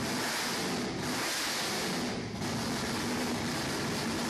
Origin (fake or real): real